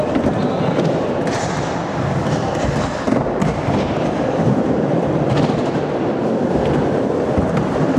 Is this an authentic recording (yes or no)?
no